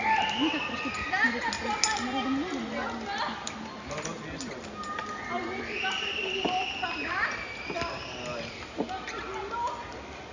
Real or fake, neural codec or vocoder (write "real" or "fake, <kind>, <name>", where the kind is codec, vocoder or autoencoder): real